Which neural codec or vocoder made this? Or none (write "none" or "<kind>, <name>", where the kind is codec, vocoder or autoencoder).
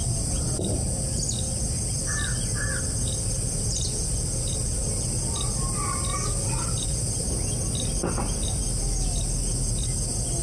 none